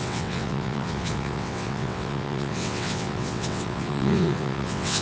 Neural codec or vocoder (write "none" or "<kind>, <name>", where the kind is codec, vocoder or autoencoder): vocoder, WaveNeXt